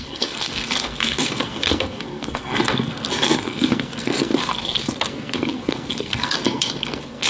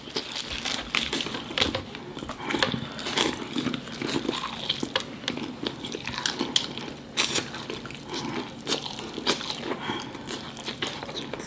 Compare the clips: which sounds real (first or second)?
second